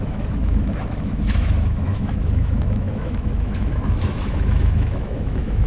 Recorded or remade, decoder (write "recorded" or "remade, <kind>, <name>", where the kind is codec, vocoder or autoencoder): remade, autoencoder, DAC-VAE